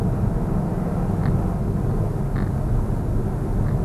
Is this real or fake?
real